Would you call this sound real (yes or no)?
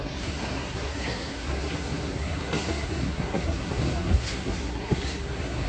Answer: no